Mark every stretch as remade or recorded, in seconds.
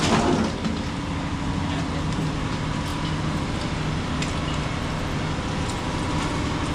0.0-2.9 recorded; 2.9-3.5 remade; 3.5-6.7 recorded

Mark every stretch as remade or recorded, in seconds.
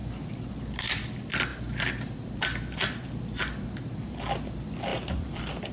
0.0-4.9 recorded; 4.9-5.7 remade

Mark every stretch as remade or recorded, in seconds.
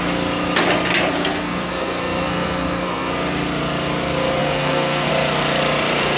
0.0-1.2 recorded; 1.2-3.1 remade; 3.1-4.4 recorded; 4.4-5.1 remade; 5.1-6.2 recorded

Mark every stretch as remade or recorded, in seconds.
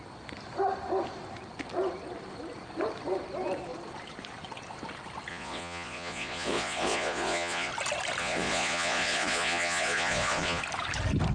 0.0-5.3 recorded; 5.3-7.7 remade; 7.7-8.2 recorded; 8.2-10.6 remade; 10.6-11.3 recorded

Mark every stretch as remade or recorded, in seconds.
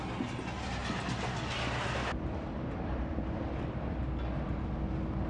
0.0-0.8 recorded; 0.8-4.0 remade; 4.0-5.3 recorded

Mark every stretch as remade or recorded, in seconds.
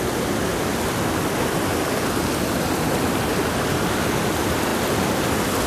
0.0-5.7 recorded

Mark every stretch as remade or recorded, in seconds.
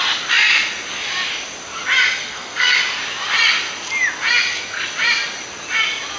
0.0-2.2 recorded; 2.2-2.8 remade; 2.8-6.2 recorded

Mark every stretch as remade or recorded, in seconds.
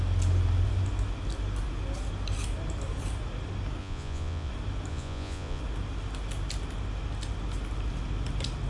0.0-3.8 recorded; 3.8-4.5 remade; 4.5-4.9 recorded; 4.9-5.6 remade; 5.6-8.7 recorded